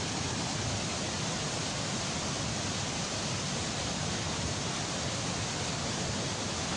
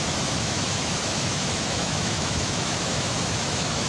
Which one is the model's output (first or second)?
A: second